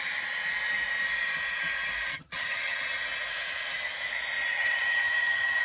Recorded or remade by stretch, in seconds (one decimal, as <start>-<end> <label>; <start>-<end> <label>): 0.0-2.1 recorded; 2.1-2.8 remade; 2.8-4.5 recorded; 4.5-5.6 remade